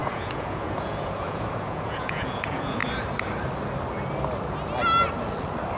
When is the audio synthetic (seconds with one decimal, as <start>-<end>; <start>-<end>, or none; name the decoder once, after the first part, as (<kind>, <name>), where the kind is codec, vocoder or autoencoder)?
0.0-2.8 (vocoder, Vocos)